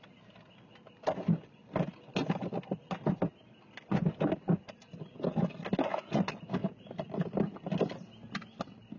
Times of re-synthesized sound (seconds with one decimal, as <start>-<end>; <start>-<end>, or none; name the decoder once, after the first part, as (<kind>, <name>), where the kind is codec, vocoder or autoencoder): none